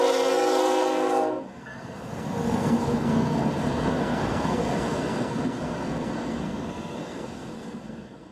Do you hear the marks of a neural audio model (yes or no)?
yes